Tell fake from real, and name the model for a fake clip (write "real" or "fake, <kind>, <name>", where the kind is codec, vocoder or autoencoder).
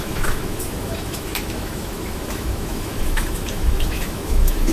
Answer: fake, autoencoder, DAC-VAE